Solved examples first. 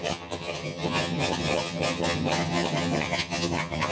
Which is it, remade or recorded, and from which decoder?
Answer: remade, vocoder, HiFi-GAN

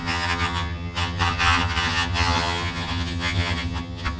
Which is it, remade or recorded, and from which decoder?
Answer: remade, vocoder, HiFi-GAN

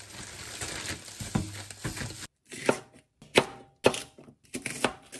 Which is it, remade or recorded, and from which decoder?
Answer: recorded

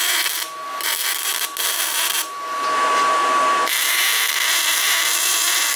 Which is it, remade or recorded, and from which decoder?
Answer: recorded